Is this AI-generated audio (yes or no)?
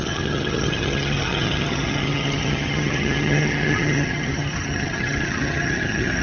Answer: yes